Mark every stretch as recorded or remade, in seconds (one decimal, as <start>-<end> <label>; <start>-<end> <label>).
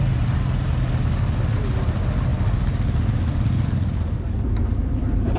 0.0-5.4 recorded